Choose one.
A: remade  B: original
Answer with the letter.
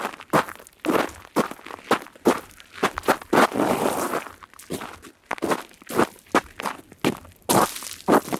B